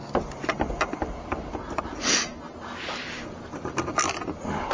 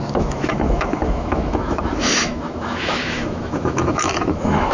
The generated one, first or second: second